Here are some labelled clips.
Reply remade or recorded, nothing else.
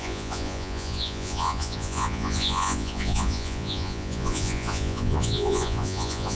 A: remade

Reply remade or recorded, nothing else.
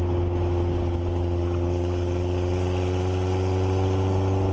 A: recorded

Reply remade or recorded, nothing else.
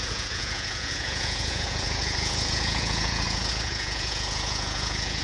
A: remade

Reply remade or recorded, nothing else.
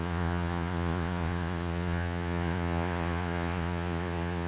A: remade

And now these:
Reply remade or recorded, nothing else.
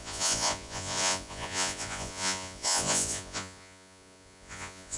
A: remade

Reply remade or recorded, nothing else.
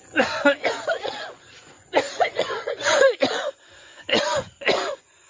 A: remade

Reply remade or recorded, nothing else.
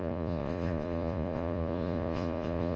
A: remade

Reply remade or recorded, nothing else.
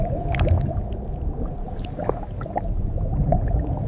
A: recorded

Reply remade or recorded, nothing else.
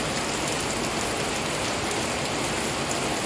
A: recorded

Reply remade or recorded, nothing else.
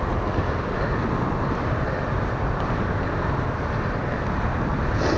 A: recorded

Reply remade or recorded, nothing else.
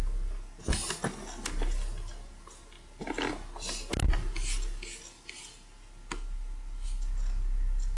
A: recorded